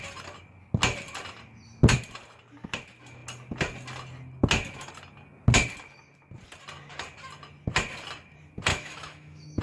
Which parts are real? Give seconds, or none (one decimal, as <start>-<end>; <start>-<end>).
0.0-8.7